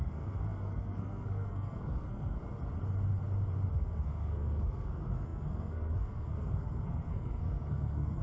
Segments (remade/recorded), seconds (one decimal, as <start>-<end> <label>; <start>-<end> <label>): 0.0-2.4 remade; 2.4-3.7 recorded; 3.7-8.2 remade